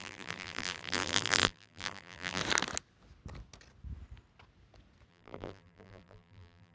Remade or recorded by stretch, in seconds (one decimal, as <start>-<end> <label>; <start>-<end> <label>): 0.0-2.4 remade; 2.4-5.1 recorded; 5.1-6.7 remade